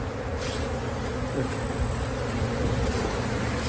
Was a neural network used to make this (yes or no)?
no